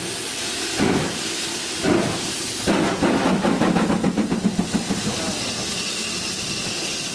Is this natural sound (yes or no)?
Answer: yes